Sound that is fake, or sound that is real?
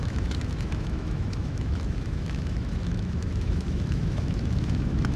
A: fake